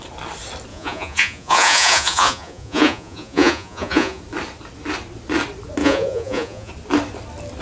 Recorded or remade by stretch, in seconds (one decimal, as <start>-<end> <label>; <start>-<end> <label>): 0.0-0.7 recorded; 0.7-4.2 remade; 4.2-5.8 recorded; 5.8-6.7 remade; 6.7-7.6 recorded